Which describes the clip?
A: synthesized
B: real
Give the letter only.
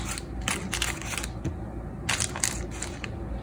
B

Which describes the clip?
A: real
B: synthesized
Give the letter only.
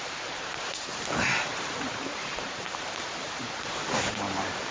B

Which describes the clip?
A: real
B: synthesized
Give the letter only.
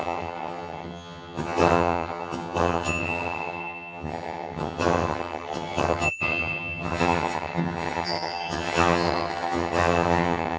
B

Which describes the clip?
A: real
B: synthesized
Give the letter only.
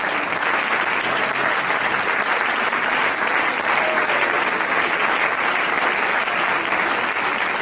A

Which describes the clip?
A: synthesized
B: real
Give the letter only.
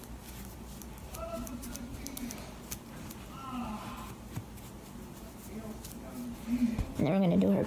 B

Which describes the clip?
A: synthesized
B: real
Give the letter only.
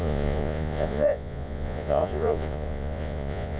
A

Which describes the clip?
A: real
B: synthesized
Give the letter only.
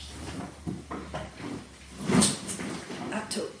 A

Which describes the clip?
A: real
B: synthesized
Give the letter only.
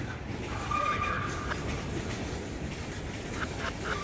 B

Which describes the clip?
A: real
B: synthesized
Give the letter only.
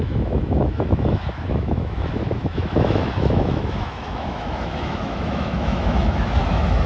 B